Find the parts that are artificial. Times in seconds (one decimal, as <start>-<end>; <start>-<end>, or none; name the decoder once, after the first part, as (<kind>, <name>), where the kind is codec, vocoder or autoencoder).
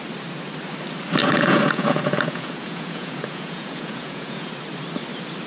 1.2-4.5 (vocoder, Vocos)